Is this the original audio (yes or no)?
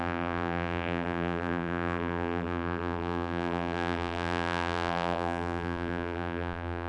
no